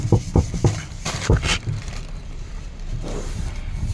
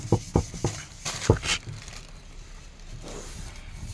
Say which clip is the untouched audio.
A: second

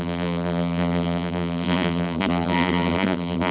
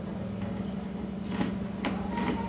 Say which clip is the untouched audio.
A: second